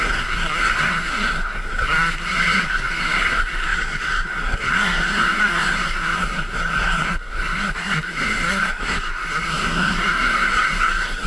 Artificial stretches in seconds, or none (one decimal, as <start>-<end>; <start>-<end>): 0.0-11.3